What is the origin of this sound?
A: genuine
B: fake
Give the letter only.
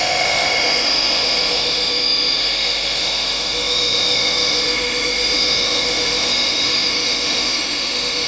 B